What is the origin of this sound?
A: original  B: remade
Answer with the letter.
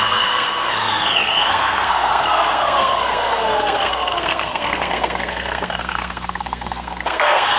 B